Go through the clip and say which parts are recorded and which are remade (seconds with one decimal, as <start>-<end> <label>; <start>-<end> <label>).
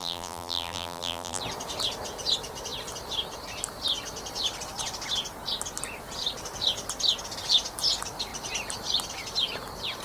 0.0-1.4 remade; 1.4-10.0 recorded